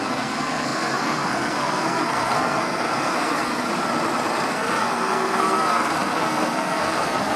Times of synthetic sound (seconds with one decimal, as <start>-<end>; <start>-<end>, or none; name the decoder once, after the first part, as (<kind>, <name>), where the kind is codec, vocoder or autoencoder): 0.0-3.5 (codec, SNAC); 4.5-7.4